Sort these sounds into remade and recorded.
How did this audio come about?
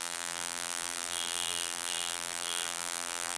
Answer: remade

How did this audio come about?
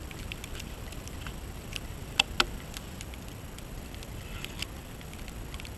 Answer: recorded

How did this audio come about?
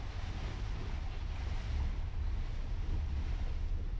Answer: recorded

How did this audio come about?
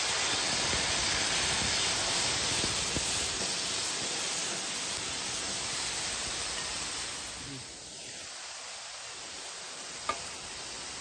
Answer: recorded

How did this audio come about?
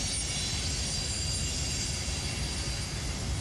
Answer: recorded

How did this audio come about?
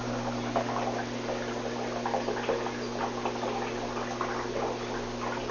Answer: recorded